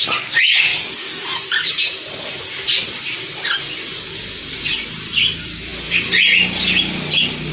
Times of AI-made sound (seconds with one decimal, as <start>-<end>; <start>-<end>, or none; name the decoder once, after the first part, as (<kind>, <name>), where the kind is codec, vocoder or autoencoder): 0.7-3.3 (vocoder, BigVGAN v2)